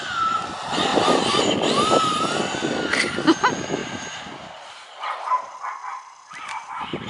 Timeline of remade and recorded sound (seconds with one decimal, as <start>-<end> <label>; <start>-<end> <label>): 0.0-3.8 recorded; 3.8-5.7 remade; 5.7-7.1 recorded